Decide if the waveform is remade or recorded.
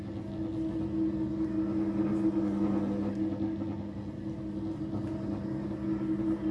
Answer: recorded